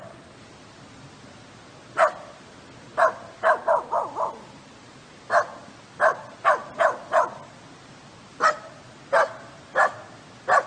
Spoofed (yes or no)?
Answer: no